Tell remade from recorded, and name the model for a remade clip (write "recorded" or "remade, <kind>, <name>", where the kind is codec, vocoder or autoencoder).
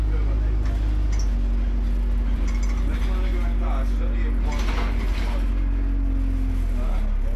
recorded